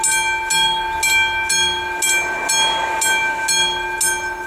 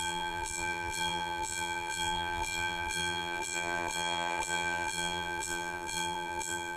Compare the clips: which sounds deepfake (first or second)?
second